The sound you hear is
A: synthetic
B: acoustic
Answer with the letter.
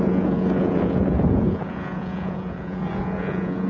A